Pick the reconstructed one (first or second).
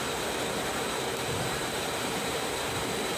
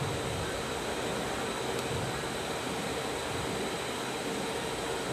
first